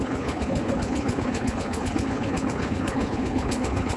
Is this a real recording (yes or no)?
no